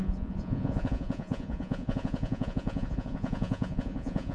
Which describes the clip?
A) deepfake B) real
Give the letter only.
A